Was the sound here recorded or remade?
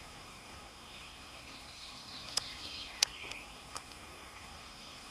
remade